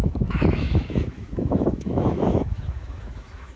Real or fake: fake